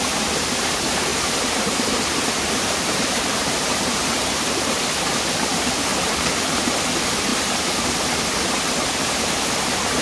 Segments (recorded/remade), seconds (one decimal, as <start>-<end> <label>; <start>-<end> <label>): 0.0-1.1 recorded; 1.1-4.8 remade; 4.8-10.0 recorded